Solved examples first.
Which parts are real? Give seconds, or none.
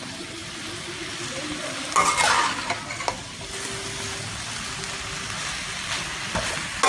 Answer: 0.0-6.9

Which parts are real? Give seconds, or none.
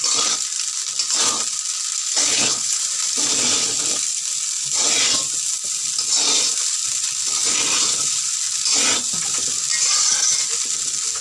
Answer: 0.0-2.0; 2.8-11.2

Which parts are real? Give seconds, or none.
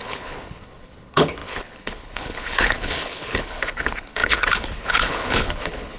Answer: none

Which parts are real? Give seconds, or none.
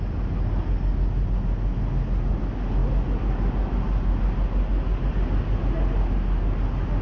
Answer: 0.0-7.0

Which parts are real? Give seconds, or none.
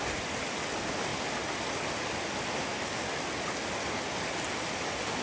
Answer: 0.0-5.2